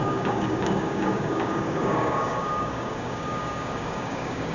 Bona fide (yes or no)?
no